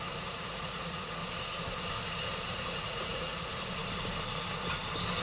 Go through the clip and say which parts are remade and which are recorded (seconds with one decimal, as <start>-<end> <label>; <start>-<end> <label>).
0.0-1.2 remade; 1.2-2.5 recorded; 2.5-3.5 remade; 3.5-5.2 recorded

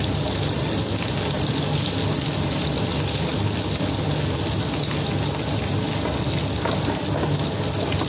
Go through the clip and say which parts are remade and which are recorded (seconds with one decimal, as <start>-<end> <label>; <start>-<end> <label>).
0.0-8.1 recorded

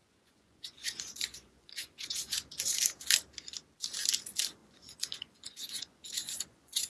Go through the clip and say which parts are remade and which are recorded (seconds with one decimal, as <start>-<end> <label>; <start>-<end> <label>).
0.0-2.5 remade; 2.5-4.6 recorded; 4.6-6.9 remade

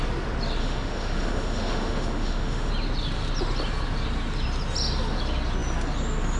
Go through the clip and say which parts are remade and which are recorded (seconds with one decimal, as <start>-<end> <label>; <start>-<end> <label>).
0.0-0.6 recorded; 0.6-2.7 remade; 2.7-6.4 recorded

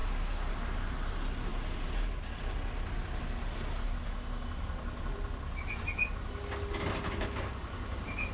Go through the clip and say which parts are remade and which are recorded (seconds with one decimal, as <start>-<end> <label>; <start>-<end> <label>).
0.0-8.3 recorded

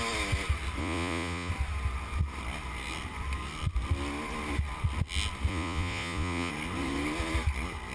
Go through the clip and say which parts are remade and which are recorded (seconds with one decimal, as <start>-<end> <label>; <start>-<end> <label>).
0.0-0.8 recorded; 0.8-1.5 remade; 1.5-5.5 recorded; 5.5-6.5 remade; 6.5-7.9 recorded

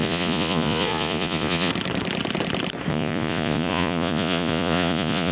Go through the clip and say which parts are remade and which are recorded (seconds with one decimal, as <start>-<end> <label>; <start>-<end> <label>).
0.0-1.7 remade; 1.7-2.9 recorded; 2.9-5.3 remade

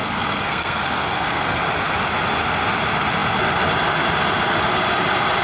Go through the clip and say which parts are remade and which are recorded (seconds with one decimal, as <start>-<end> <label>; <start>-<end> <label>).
0.0-1.6 remade; 1.6-5.4 recorded